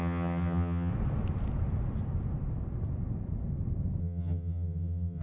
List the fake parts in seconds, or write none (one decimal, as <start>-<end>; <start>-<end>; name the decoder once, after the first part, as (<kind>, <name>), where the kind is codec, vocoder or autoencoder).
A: 0.0-0.9 (vocoder, HiFi-GAN); 4.0-5.2